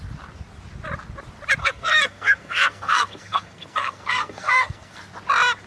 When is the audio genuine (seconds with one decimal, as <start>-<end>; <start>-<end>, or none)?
0.0-1.6; 5.0-5.7